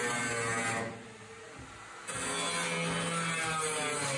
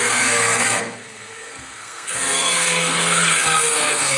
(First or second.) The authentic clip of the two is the first